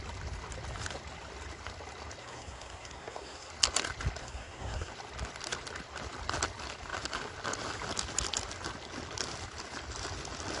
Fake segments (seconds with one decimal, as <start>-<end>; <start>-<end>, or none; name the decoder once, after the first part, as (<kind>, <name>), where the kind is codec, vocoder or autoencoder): 2.2-3.5 (codec, SNAC); 4.2-4.9